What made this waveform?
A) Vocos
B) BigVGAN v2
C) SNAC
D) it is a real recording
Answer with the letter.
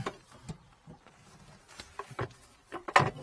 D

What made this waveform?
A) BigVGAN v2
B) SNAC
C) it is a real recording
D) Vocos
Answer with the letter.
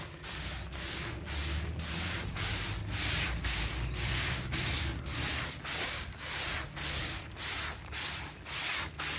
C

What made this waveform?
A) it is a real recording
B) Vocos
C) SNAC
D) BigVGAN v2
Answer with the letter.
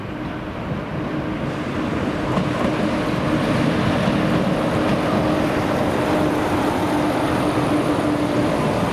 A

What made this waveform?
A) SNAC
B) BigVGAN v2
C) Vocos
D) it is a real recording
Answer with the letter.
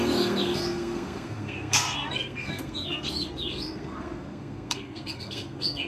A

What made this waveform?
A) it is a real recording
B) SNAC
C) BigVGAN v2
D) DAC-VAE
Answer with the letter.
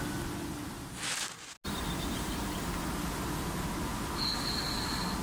A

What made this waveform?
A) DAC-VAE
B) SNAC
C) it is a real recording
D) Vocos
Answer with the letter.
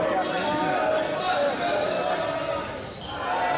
C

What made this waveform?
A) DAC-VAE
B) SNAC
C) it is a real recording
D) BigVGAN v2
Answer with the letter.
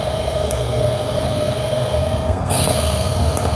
B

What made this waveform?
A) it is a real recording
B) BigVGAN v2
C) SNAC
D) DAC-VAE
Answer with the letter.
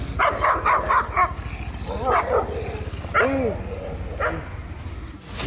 A